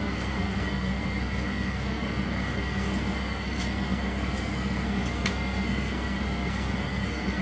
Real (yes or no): no